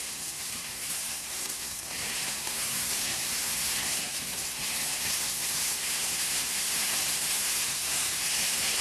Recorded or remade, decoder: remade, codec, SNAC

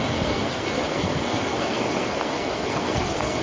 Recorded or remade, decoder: remade, codec, SNAC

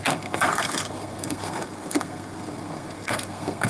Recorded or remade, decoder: remade, codec, SNAC